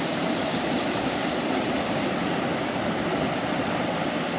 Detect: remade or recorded recorded